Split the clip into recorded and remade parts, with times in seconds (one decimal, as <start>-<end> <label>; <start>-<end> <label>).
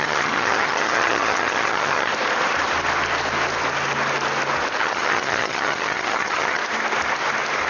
0.0-2.1 remade; 2.1-4.8 recorded; 4.8-6.6 remade; 6.6-7.7 recorded